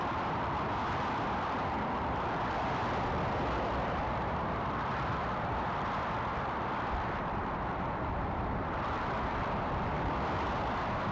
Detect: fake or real fake